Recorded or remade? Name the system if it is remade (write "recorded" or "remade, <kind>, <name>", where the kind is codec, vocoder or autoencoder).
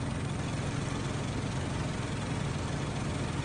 recorded